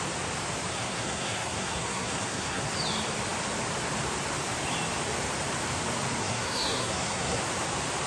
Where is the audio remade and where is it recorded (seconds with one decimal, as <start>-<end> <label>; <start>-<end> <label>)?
0.0-0.7 recorded; 0.7-2.7 remade; 2.7-6.2 recorded; 6.2-7.4 remade; 7.4-8.1 recorded